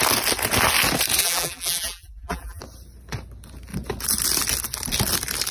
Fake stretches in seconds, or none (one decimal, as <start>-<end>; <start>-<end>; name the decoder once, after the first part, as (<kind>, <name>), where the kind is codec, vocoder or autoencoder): 1.2-2.6 (vocoder, BigVGAN v2)

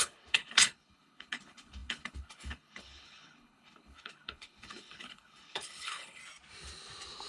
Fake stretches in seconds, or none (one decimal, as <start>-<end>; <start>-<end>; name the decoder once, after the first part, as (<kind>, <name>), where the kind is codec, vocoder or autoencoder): 0.0-6.2 (codec, HILCodec)

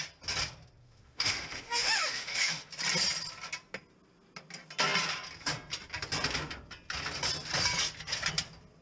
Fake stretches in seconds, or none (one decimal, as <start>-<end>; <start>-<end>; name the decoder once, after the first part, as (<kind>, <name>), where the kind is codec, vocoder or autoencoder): 0.8-2.7 (autoencoder, DAC-VAE)